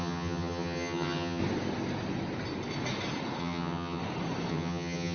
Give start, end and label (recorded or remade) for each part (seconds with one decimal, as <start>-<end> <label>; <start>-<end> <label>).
0.0-1.4 remade; 1.4-3.4 recorded; 3.4-4.0 remade; 4.0-4.5 recorded; 4.5-5.1 remade